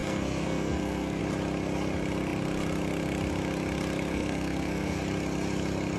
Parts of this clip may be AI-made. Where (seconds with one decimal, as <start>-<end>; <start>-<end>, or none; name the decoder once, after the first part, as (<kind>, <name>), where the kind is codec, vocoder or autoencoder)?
0.0-1.2 (codec, SNAC); 4.1-5.0